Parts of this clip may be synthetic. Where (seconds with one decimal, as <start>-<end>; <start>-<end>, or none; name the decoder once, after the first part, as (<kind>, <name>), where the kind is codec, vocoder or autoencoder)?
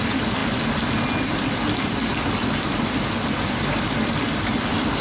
none